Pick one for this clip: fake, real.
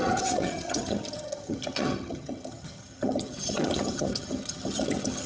fake